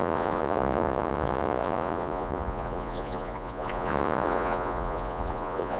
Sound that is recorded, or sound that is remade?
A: remade